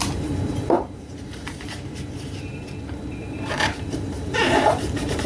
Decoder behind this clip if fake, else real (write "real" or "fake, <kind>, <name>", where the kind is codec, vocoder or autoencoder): fake, vocoder, BigVGAN v2